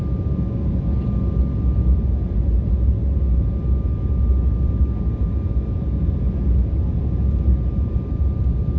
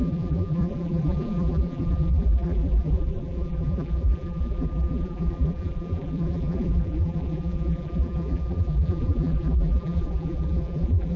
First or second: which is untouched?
first